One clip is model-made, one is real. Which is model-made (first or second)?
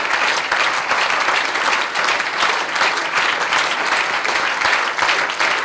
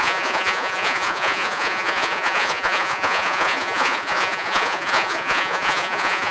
second